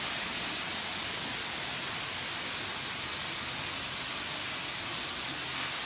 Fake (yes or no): no